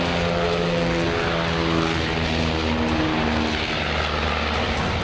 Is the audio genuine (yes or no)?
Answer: yes